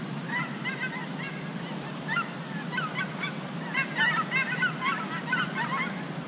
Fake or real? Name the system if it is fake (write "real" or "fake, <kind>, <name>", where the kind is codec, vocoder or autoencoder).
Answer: real